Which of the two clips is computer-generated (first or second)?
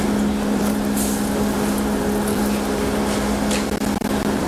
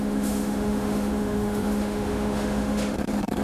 second